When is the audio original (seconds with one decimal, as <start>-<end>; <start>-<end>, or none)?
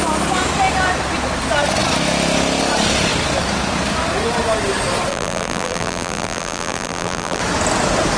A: 0.0-5.1; 7.4-8.2